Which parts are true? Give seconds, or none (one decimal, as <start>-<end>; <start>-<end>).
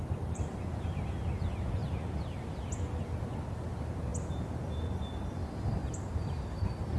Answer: 0.0-5.8; 6.6-7.0